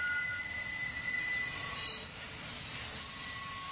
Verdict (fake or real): real